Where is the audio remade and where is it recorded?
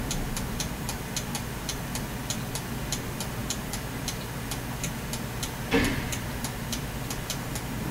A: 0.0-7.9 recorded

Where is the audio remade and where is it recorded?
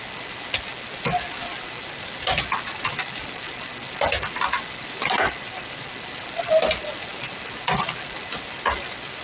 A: 0.0-9.2 recorded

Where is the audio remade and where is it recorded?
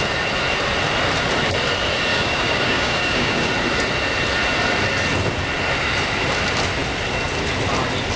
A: 0.0-2.1 recorded; 2.1-3.5 remade; 3.5-8.2 recorded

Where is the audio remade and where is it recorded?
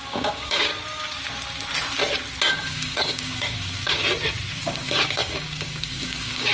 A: 0.0-0.7 remade; 0.7-2.5 recorded; 2.5-4.0 remade; 4.0-4.6 recorded; 4.6-6.5 remade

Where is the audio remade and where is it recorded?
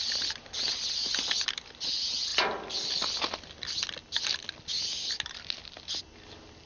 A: 0.0-6.7 recorded